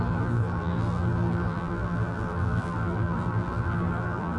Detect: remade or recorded remade